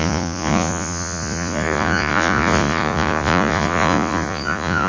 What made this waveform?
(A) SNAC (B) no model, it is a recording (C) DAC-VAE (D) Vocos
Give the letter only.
D